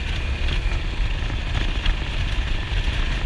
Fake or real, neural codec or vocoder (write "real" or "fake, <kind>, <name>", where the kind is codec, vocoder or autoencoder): real